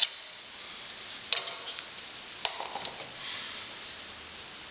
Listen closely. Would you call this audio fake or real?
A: real